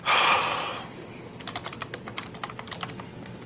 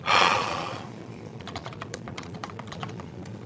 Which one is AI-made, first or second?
second